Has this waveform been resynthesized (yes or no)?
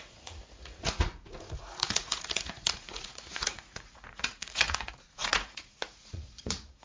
yes